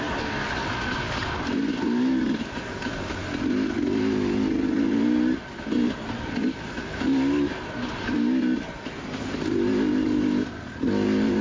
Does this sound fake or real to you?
real